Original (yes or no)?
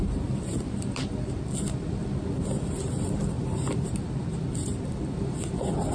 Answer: no